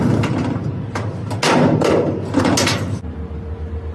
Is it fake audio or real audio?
real